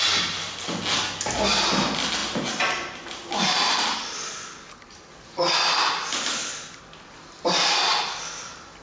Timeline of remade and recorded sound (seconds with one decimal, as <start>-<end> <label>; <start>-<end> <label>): 0.0-8.8 recorded